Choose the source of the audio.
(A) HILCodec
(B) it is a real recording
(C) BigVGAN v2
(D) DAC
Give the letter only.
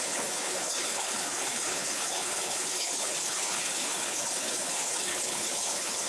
A